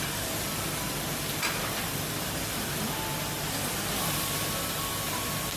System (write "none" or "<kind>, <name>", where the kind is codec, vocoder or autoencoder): none